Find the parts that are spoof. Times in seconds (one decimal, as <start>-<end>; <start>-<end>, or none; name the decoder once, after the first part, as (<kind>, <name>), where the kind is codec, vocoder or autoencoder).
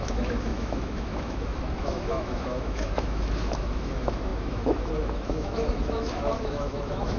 0.0-7.2 (autoencoder, DAC-VAE)